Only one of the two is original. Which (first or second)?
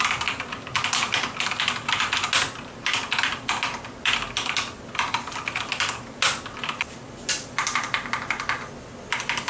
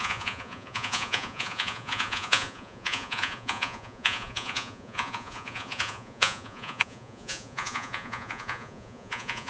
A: first